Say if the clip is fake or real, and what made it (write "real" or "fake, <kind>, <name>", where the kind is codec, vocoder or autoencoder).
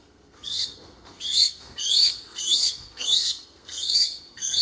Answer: fake, codec, SNAC